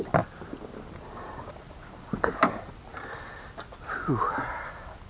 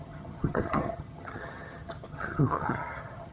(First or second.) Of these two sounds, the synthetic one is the second